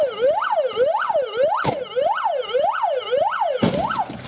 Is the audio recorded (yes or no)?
yes